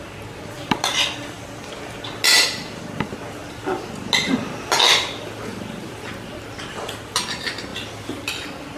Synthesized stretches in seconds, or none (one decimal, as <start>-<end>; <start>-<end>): none